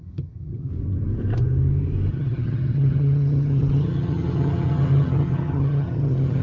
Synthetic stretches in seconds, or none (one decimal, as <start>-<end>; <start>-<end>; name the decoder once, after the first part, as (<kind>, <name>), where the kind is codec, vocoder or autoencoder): 0.0-0.7 (vocoder, HiFi-GAN); 2.1-6.4